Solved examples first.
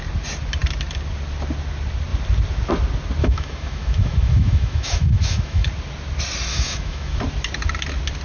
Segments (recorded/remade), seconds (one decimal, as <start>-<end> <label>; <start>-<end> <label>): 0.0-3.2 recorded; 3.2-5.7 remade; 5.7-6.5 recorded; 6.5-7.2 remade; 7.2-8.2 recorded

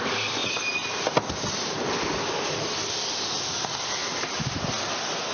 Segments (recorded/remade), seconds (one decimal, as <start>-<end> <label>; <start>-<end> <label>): 0.0-5.3 recorded

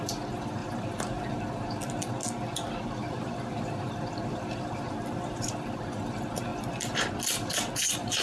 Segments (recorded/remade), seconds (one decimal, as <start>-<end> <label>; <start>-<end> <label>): 0.0-0.6 recorded; 0.6-1.2 remade; 1.2-3.0 recorded; 3.0-5.5 remade; 5.5-8.2 recorded

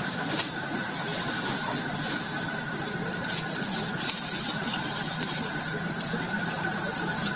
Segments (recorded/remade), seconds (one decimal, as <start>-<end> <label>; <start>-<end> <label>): 0.0-7.4 remade

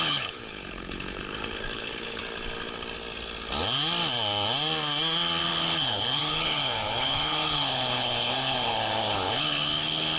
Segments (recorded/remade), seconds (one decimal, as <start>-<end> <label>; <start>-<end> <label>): 0.0-2.2 remade; 2.2-5.4 recorded; 5.4-10.2 remade

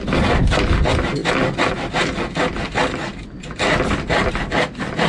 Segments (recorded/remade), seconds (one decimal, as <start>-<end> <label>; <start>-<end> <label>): 0.0-5.1 recorded